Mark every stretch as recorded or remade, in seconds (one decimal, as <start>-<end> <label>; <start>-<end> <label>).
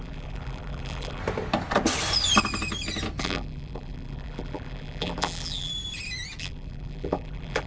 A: 0.0-1.2 remade; 1.2-3.2 recorded; 3.2-5.7 remade; 5.7-6.4 recorded; 6.4-7.7 remade